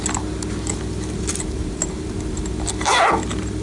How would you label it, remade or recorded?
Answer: recorded